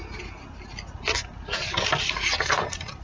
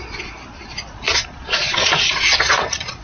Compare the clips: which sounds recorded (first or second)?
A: first